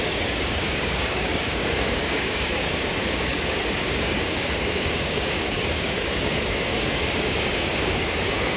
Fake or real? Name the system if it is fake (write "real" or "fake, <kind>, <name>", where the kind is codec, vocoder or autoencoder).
fake, codec, DAC